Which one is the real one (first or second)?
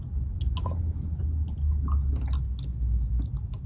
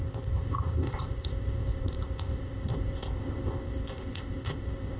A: first